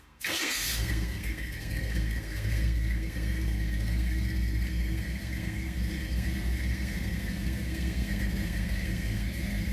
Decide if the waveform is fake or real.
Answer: fake